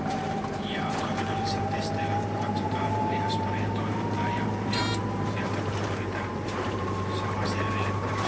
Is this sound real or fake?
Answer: fake